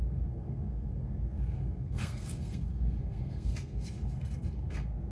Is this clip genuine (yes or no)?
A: no